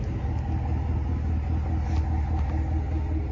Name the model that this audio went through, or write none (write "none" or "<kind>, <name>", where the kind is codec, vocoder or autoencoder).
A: none